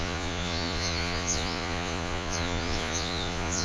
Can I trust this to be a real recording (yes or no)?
no